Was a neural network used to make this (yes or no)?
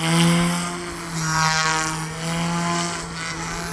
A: no